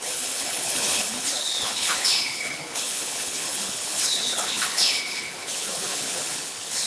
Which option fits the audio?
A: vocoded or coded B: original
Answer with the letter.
A